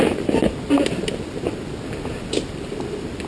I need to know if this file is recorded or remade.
recorded